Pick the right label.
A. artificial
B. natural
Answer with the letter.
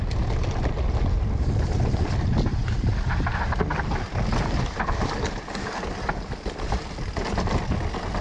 B